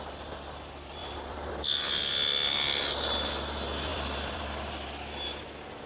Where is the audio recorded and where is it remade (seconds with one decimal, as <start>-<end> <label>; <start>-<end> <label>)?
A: 0.0-1.0 recorded; 1.0-2.1 remade; 2.1-3.9 recorded; 3.9-4.4 remade; 4.4-5.9 recorded